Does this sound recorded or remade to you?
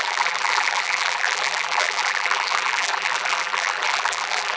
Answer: remade